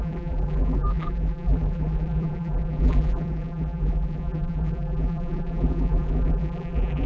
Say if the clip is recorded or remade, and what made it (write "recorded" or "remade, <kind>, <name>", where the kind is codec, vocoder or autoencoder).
remade, vocoder, BigVGAN v2